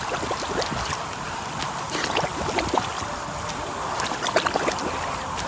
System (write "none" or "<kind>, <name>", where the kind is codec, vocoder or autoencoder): none